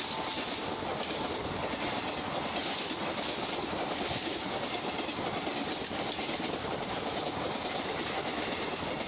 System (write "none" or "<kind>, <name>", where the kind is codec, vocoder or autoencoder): none